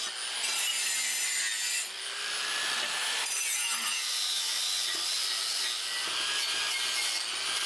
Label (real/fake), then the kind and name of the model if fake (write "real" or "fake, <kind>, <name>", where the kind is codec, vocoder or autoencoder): real